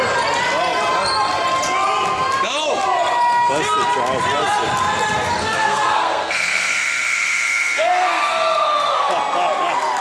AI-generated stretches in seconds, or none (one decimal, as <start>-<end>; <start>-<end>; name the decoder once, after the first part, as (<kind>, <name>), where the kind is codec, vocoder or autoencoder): 5.4-9.1 (codec, SNAC)